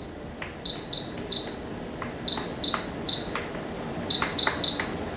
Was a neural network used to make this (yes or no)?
no